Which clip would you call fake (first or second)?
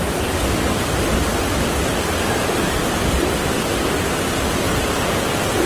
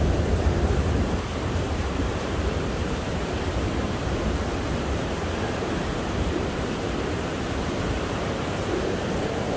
second